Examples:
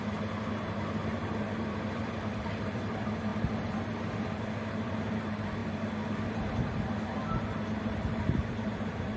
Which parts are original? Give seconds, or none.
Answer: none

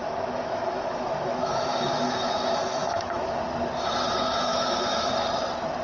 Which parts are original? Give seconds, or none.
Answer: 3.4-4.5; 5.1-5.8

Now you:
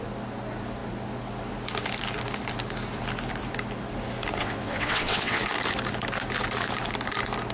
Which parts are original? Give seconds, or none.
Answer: 0.0-4.4; 5.4-7.5

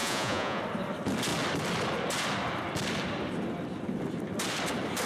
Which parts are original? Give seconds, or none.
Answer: 0.6-5.0

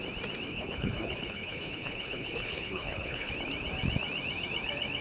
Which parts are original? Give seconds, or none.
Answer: 0.0-0.5; 3.3-5.0

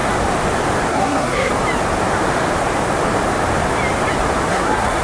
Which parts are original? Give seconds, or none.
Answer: 0.0-0.9; 1.5-4.5

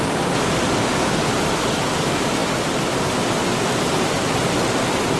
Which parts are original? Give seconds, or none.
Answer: 0.0-5.2

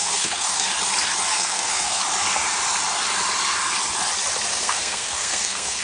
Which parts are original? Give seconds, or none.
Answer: 0.7-1.3; 2.0-4.5